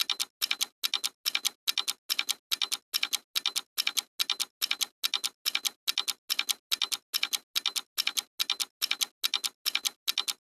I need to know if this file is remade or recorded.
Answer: recorded